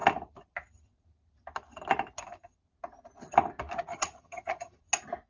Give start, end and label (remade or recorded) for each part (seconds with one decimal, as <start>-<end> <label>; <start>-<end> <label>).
0.0-3.9 recorded; 3.9-4.8 remade; 4.8-5.3 recorded